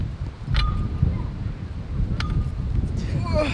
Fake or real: real